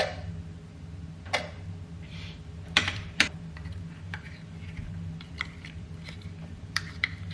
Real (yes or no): no